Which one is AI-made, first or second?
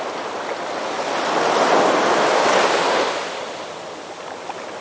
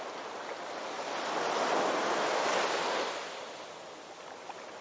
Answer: first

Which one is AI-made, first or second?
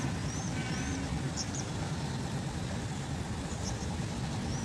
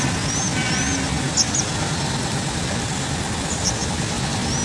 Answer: first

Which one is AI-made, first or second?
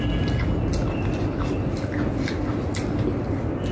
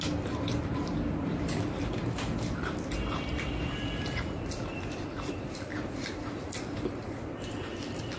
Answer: second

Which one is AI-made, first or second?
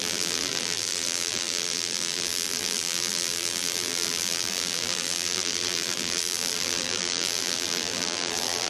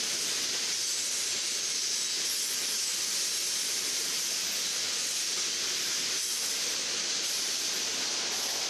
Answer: first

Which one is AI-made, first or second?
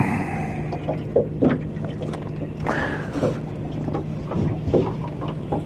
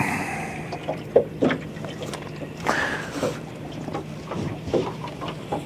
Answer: second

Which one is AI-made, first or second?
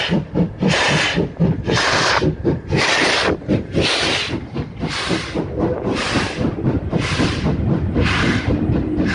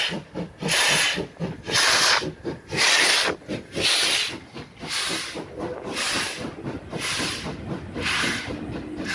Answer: first